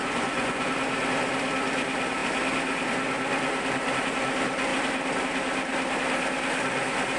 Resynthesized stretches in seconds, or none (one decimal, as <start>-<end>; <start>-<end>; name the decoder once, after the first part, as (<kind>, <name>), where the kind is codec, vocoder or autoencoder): 0.0-0.7 (vocoder, Vocos)